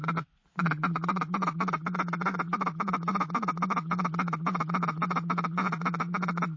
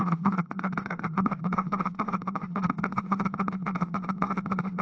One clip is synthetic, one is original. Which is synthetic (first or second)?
second